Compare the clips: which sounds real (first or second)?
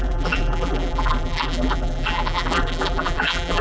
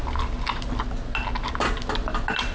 second